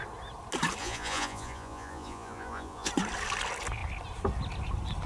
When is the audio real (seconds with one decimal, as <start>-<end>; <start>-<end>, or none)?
0.0-0.8; 2.9-5.1